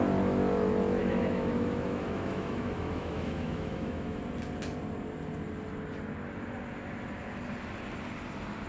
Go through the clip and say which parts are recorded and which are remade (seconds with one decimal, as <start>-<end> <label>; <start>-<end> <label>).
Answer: 0.0-1.0 recorded; 1.0-4.2 remade; 4.2-8.7 recorded